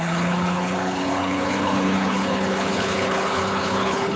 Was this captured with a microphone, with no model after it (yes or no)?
no